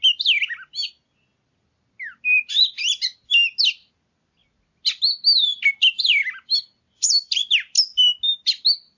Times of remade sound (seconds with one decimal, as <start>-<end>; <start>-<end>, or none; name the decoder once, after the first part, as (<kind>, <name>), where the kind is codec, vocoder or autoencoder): none